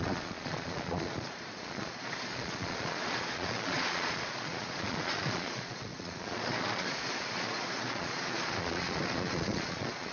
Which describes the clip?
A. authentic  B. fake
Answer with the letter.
B